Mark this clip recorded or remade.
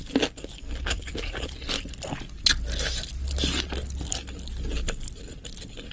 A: recorded